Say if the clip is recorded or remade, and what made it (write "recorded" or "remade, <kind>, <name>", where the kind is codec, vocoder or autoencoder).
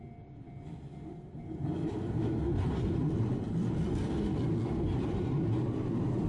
recorded